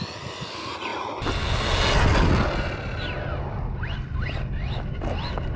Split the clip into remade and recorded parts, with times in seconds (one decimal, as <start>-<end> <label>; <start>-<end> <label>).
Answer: 0.0-5.6 recorded